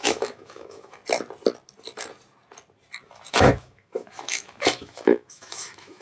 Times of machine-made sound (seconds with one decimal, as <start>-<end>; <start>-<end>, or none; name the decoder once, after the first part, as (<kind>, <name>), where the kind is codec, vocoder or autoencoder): 0.0-1.0 (autoencoder, DAC-VAE); 3.3-6.0